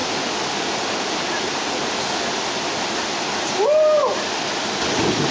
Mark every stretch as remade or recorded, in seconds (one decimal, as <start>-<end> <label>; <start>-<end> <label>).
0.0-5.3 recorded